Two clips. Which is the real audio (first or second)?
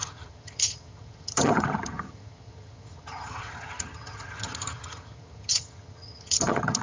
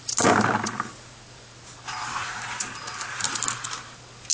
second